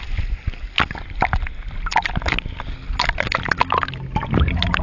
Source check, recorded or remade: recorded